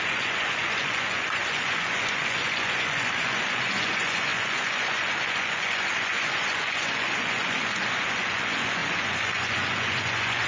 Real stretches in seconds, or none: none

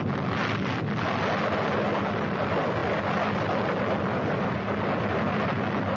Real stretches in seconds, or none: 0.0-6.0

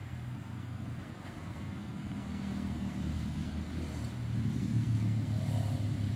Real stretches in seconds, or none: 3.7-4.6; 5.4-6.2

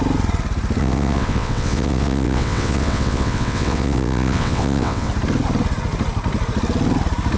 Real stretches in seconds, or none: 0.0-0.8; 5.1-7.4